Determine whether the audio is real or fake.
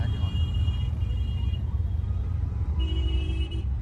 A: fake